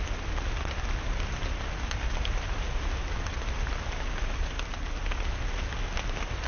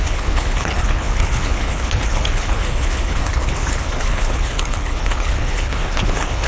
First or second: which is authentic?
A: first